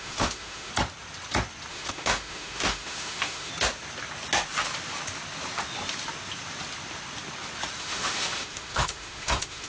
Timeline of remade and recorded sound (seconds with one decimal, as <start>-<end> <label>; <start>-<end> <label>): 0.0-0.7 remade; 0.7-1.7 recorded; 1.7-3.5 remade; 3.5-7.8 recorded; 7.8-9.7 remade